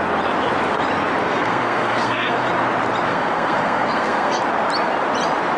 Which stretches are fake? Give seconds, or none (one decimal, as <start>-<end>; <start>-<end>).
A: 1.2-2.5; 3.1-4.4